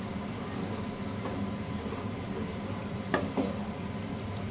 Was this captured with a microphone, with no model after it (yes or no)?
yes